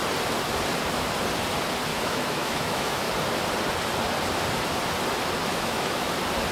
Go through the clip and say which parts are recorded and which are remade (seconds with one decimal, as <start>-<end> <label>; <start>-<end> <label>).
0.0-1.9 recorded; 1.9-3.1 remade; 3.1-5.5 recorded; 5.5-6.1 remade; 6.1-6.5 recorded